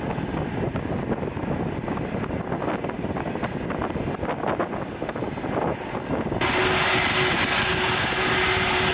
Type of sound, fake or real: real